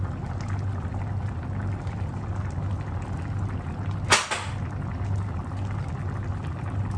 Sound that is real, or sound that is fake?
real